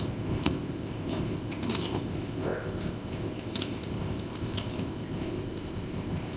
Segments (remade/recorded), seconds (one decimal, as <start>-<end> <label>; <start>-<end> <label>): 0.0-6.4 remade